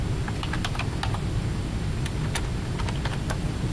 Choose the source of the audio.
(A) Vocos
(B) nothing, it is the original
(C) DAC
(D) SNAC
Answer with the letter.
B